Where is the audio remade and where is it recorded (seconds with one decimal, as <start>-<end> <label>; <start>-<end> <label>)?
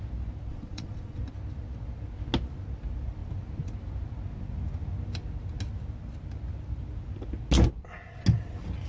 0.0-0.5 recorded; 0.5-1.2 remade; 1.2-8.9 recorded